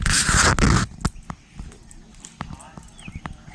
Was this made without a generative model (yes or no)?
yes